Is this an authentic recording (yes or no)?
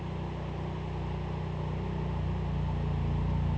yes